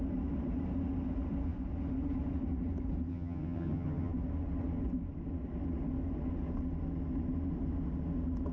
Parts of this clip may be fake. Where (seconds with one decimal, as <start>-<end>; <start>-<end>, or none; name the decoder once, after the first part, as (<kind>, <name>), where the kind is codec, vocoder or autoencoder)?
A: 3.1-4.1 (vocoder, HiFi-GAN)